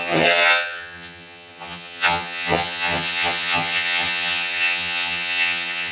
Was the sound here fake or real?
fake